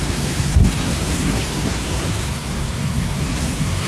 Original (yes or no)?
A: no